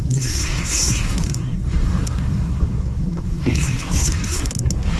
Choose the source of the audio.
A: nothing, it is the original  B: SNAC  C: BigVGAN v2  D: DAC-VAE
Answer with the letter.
B